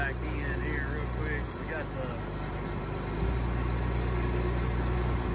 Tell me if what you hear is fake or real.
real